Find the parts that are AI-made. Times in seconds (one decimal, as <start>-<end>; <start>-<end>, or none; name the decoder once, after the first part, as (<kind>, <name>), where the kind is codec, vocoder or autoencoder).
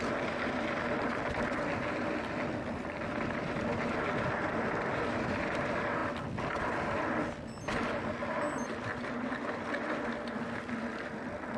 none